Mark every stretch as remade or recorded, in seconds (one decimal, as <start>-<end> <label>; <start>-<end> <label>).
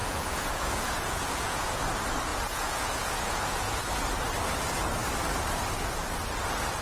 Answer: 0.0-1.8 remade; 1.8-2.3 recorded; 2.3-3.9 remade; 3.9-6.8 recorded